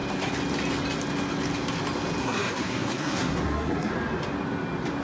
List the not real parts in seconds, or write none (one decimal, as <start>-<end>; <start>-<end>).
2.2-3.9